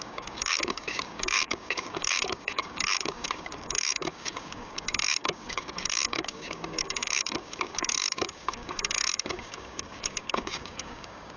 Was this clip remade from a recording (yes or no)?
yes